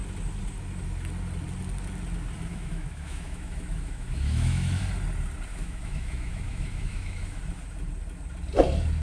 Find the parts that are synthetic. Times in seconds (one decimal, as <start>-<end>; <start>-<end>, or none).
2.5-4.8; 5.5-7.4